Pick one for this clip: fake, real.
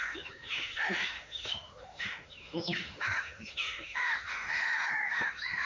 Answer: fake